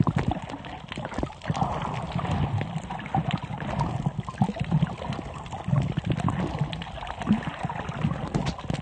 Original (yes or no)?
yes